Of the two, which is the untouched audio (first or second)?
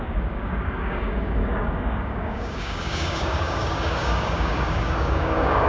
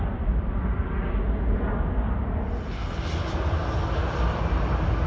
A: second